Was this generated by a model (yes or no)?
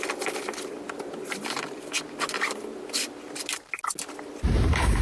no